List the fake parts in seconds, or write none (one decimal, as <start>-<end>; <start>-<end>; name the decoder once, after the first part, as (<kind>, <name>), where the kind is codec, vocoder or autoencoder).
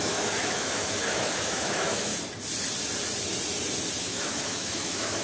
0.0-2.1 (autoencoder, DAC-VAE); 4.0-5.2